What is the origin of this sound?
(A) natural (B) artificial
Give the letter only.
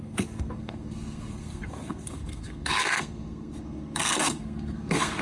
B